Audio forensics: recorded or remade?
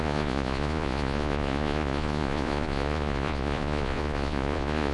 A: remade